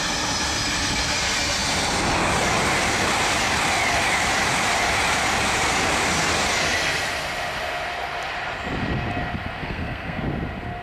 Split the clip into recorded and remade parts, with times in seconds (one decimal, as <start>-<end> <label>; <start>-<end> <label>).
0.0-9.6 recorded; 9.6-10.2 remade; 10.2-10.8 recorded